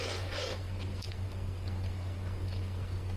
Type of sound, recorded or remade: remade